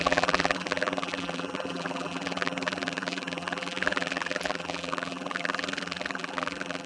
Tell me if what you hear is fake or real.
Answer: fake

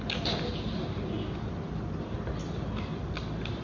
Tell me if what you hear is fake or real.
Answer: real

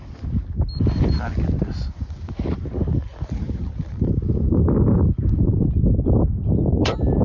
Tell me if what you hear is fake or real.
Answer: real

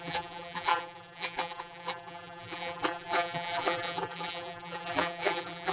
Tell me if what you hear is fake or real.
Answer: fake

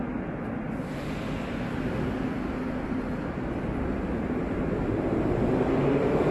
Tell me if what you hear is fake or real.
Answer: real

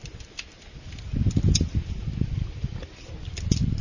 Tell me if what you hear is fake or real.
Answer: real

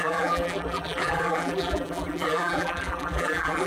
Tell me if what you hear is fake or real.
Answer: fake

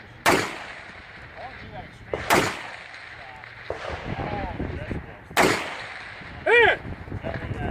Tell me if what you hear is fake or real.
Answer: real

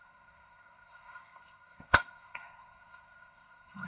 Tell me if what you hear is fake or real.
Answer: fake